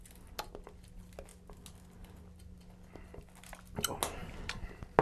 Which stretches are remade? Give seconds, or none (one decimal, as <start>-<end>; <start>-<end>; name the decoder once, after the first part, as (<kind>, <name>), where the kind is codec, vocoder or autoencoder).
none